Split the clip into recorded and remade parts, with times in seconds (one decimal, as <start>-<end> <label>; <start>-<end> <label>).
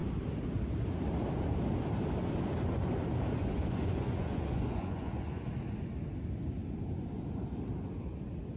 0.0-3.4 recorded; 3.4-5.5 remade; 5.5-8.6 recorded